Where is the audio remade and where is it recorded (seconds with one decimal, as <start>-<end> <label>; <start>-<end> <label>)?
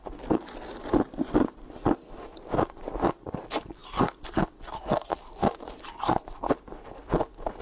0.0-7.6 recorded